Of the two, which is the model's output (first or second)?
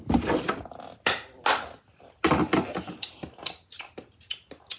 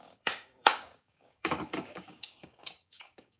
second